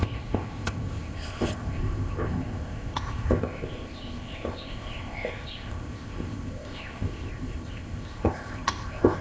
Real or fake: fake